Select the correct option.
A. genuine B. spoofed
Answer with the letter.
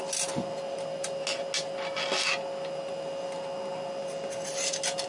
A